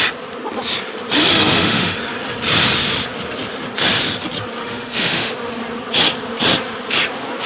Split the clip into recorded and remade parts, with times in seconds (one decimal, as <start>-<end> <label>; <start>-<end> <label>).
0.0-1.3 recorded; 1.3-2.0 remade; 2.0-4.6 recorded; 4.6-5.3 remade; 5.3-7.5 recorded